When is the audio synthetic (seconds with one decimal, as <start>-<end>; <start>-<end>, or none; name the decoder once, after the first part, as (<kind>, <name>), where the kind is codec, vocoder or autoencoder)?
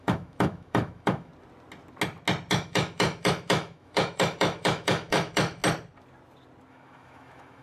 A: 0.0-1.3 (autoencoder, DAC-VAE); 2.5-5.6; 6.7-7.6